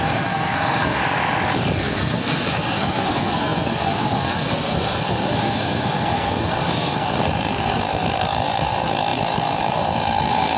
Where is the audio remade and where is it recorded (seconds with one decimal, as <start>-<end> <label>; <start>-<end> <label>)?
0.0-1.0 remade; 1.0-1.8 recorded; 1.8-10.6 remade